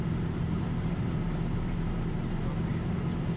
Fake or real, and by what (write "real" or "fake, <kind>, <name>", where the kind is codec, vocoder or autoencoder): fake, vocoder, BigVGAN v2